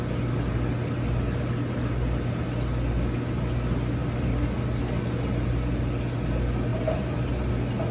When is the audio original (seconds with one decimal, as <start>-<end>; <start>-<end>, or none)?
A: 0.0-6.7; 7.5-7.9